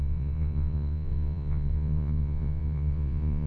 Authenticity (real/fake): fake